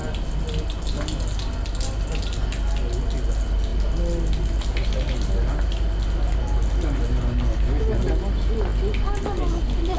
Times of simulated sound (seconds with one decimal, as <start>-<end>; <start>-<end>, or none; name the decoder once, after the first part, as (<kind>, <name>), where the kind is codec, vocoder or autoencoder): none